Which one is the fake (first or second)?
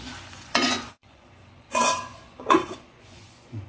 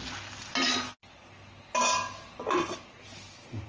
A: first